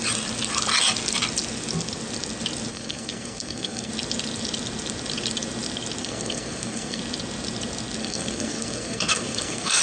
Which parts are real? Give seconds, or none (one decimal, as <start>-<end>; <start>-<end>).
0.0-2.7; 3.9-6.0; 7.0-8.0